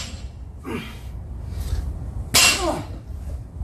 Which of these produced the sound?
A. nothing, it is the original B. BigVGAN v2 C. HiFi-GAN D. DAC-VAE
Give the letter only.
A